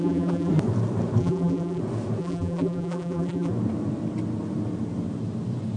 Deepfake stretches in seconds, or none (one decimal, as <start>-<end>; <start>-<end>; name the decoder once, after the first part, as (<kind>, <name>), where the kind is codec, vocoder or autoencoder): 0.0-0.5 (vocoder, BigVGAN v2); 1.2-1.8; 2.2-3.5